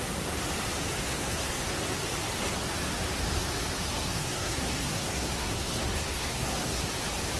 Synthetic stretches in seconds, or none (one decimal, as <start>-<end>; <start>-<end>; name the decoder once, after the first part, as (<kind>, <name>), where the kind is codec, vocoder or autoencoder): 1.0-1.8 (codec, SNAC); 4.0-6.8